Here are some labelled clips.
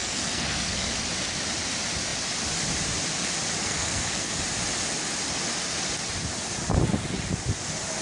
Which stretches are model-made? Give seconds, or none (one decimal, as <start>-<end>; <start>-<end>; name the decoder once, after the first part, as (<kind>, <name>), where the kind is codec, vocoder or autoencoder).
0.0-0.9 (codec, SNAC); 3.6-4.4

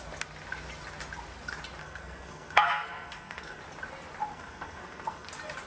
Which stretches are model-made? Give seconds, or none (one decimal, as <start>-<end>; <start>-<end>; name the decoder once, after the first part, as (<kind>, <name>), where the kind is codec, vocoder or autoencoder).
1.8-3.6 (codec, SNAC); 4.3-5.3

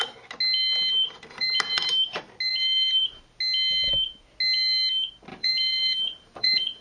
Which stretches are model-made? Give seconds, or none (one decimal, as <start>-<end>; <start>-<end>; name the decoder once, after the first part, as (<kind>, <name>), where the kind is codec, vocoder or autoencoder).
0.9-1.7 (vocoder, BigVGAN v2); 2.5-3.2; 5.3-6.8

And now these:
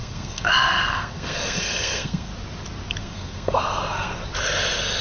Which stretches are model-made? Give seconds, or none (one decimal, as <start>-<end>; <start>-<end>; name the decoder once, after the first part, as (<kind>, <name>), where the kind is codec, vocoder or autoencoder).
0.0-2.3 (codec, SNAC); 3.0-4.2

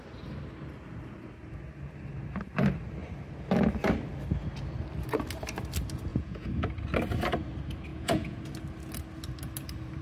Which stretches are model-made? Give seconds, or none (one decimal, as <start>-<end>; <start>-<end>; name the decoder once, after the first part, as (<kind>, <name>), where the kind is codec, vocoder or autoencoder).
6.1-6.7 (vocoder, Vocos); 7.9-8.4

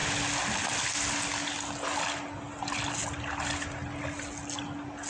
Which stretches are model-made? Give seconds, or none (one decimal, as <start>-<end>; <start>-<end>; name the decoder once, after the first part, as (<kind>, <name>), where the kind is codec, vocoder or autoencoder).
none

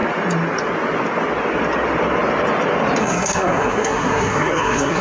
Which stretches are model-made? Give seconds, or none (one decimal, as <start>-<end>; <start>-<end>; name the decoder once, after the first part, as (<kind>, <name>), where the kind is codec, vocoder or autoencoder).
3.0-5.0 (codec, SNAC)